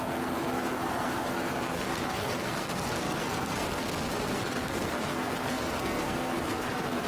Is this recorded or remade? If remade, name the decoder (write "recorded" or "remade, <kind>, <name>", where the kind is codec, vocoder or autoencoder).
remade, codec, SNAC